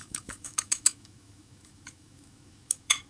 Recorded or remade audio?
remade